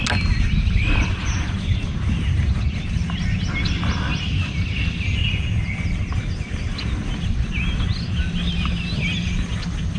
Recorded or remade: recorded